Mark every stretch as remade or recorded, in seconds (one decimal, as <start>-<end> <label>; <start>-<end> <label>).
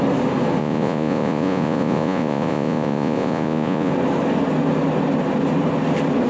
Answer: 0.0-0.6 recorded; 0.6-3.9 remade; 3.9-6.3 recorded